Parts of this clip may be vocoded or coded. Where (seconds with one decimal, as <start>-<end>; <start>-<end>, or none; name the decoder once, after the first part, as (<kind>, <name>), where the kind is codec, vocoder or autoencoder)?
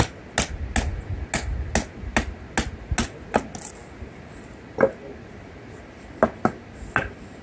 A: none